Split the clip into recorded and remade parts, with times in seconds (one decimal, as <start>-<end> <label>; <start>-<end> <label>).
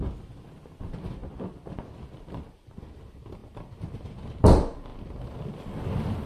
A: 0.0-6.3 recorded